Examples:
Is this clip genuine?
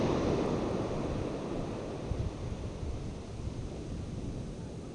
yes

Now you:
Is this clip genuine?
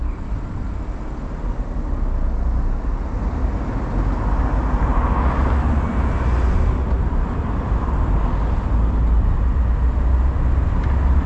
yes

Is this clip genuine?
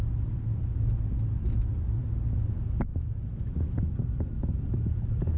yes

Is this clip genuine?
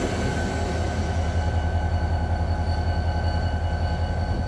yes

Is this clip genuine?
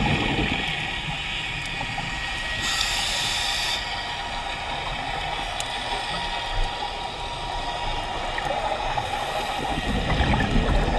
yes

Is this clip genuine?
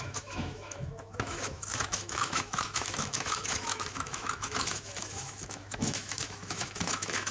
no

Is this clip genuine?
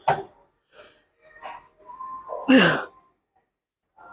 yes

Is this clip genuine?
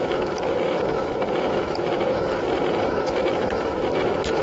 no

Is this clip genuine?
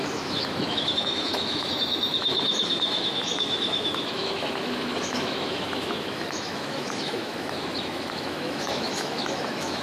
no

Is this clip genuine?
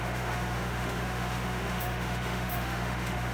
no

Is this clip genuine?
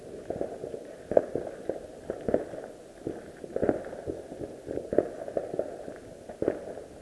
yes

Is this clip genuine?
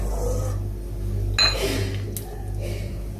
yes